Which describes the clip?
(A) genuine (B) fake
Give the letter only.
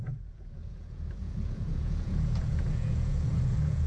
B